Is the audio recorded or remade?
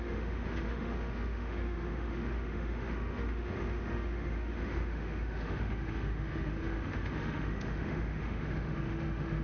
remade